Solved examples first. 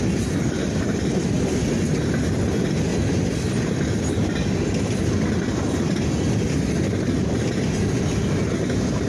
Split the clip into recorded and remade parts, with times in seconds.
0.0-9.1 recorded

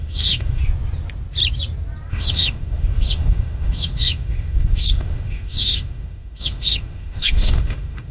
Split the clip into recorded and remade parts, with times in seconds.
0.0-0.6 remade; 0.6-2.1 recorded; 2.1-8.1 remade

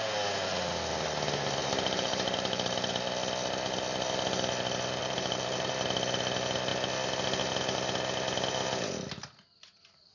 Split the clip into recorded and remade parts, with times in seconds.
0.0-1.6 recorded; 1.6-2.9 remade; 2.9-5.0 recorded; 5.0-5.7 remade; 5.7-10.1 recorded

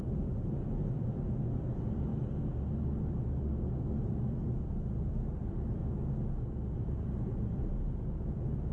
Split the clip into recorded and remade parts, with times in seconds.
0.0-2.1 remade; 2.1-2.8 recorded; 2.8-5.8 remade; 5.8-6.8 recorded; 6.8-8.7 remade

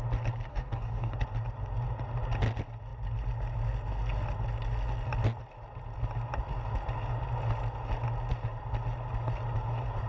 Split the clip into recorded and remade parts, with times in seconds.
0.0-0.5 recorded; 0.5-1.1 remade; 1.1-10.1 recorded

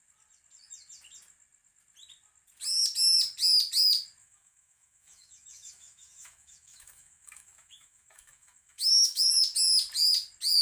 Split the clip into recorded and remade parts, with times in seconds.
0.0-4.2 recorded; 4.2-9.3 remade; 9.3-10.6 recorded

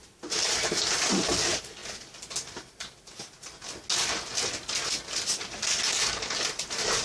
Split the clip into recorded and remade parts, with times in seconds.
0.0-1.8 remade; 1.8-6.0 recorded; 6.0-7.0 remade